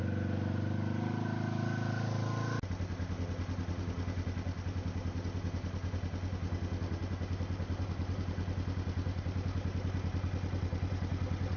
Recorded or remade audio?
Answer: recorded